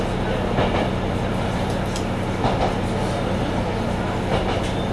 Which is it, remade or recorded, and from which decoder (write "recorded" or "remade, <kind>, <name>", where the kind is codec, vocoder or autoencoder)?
recorded